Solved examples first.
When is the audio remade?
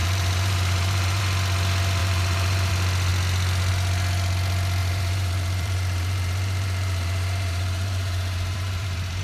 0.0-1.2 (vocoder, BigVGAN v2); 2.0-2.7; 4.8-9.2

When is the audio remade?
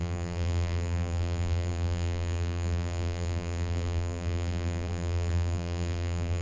0.0-6.4 (vocoder, BigVGAN v2)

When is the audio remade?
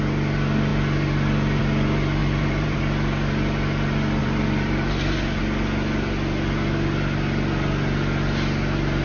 2.2-2.8 (vocoder, BigVGAN v2); 4.2-5.4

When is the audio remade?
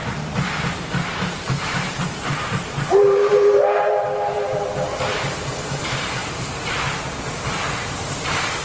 0.0-8.6 (vocoder, BigVGAN v2)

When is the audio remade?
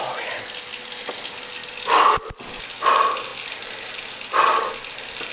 none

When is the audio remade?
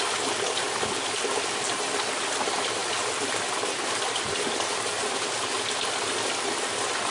none